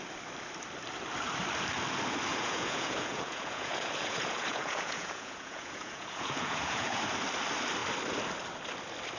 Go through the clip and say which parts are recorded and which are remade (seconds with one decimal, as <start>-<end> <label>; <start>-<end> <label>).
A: 0.0-2.3 recorded; 2.3-7.0 remade; 7.0-9.2 recorded